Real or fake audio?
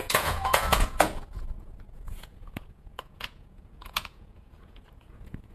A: fake